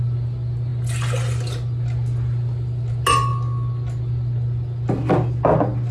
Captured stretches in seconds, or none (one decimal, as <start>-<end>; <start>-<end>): 0.0-5.9